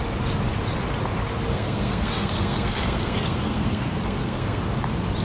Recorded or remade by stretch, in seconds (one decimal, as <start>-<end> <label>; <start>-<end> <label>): 0.0-1.5 recorded; 1.5-4.6 remade; 4.6-5.2 recorded